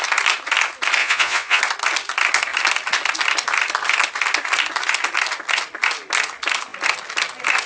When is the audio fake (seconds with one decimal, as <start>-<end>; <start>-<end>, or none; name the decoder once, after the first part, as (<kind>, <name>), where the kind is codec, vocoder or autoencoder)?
1.0-1.6 (vocoder, Vocos)